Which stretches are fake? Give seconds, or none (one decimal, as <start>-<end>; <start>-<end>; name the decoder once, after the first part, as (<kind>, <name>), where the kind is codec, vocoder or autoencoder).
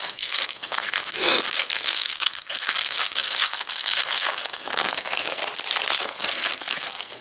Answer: 0.0-5.4 (codec, SNAC); 6.0-7.2